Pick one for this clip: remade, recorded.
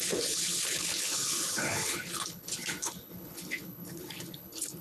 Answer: remade